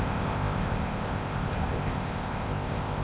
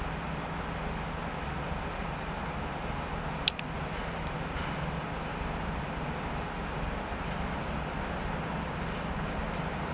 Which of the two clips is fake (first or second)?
first